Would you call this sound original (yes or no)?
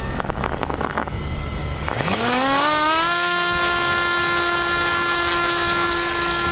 no